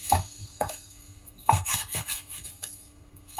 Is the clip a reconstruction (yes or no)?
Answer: yes